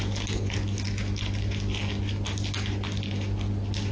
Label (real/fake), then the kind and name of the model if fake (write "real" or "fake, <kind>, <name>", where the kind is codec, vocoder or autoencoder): real